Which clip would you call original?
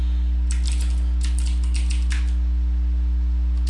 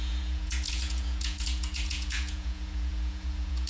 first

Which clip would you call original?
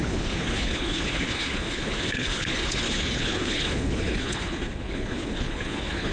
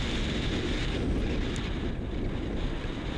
second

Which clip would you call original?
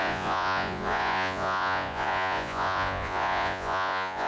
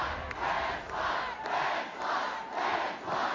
second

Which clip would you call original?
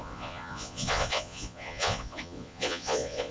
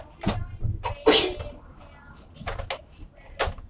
second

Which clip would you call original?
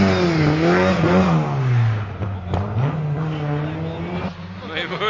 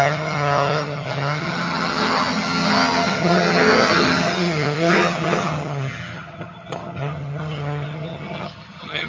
first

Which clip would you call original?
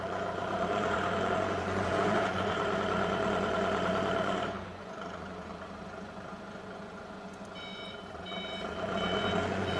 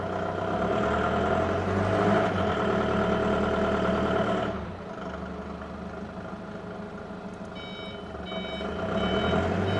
second